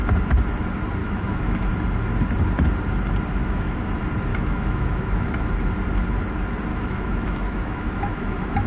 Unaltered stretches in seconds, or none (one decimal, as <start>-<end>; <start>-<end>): 0.0-1.0; 1.7-3.4; 3.9-4.3; 5.5-6.7